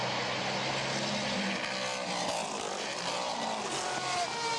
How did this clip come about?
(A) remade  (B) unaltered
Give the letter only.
B